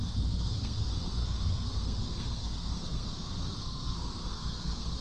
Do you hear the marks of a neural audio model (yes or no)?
yes